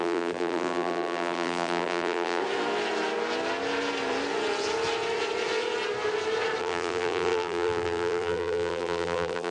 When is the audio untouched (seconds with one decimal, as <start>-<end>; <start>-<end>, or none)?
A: 2.4-6.6